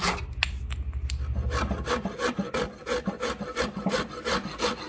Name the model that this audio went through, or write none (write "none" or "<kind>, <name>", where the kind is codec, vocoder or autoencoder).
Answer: none